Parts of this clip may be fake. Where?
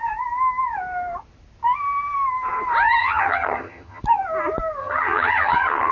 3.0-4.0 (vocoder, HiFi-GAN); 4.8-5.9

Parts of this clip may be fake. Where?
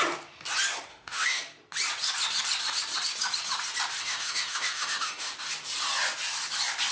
0.9-1.4 (autoencoder, DAC-VAE); 4.0-5.3